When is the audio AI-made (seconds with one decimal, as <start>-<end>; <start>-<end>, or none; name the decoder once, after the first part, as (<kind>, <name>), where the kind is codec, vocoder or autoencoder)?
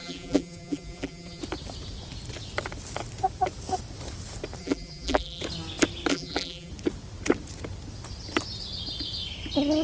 0.0-1.4 (vocoder, BigVGAN v2); 4.6-5.4; 6.1-6.7